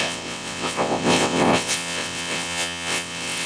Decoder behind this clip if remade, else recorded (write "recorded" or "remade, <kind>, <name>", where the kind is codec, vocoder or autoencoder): remade, vocoder, WaveNeXt